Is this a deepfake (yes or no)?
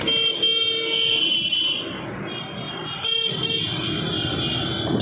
no